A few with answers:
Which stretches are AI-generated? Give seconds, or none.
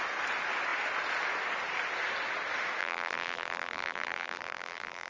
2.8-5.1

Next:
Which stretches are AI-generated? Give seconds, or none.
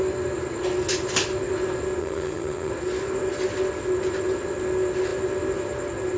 2.0-2.7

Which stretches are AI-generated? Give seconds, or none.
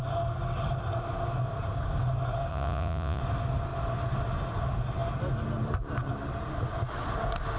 2.5-3.2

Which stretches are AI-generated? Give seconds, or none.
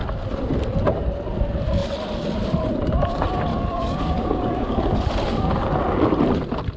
3.5-5.0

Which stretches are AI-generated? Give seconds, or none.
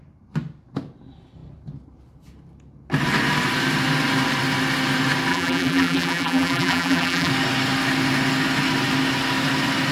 5.3-7.3